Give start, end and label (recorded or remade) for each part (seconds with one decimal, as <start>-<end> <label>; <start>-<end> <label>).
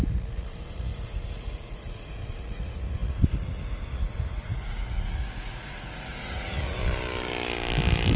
0.0-6.8 remade; 6.8-8.2 recorded